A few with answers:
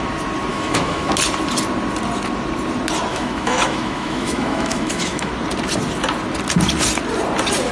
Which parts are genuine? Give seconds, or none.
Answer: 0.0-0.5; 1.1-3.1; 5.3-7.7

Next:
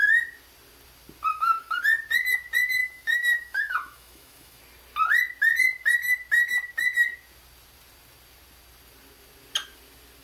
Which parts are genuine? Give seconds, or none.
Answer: 0.0-1.3; 1.8-2.8; 4.6-10.2

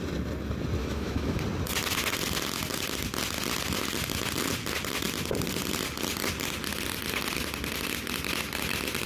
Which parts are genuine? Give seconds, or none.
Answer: 0.0-0.8; 1.4-9.1

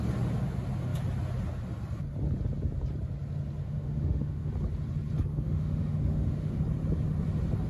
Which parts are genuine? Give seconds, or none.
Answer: 0.0-3.6; 4.5-5.3; 6.6-7.7

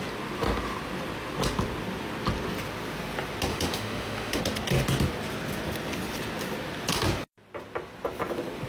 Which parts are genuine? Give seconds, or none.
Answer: 0.0-3.5; 4.4-8.7

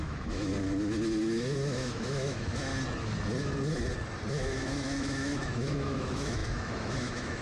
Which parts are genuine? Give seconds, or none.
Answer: 0.5-1.2; 2.7-4.3

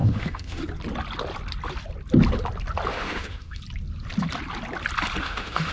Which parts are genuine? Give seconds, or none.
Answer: 0.6-2.9; 3.6-5.2

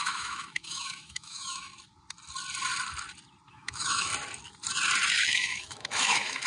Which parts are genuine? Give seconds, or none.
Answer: 1.7-3.5; 4.1-5.1